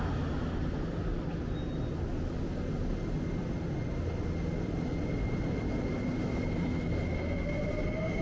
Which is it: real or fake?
real